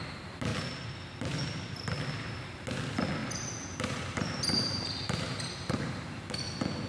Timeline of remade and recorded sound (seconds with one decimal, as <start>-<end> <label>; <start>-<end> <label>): 0.0-3.2 recorded; 3.2-6.2 remade; 6.2-6.9 recorded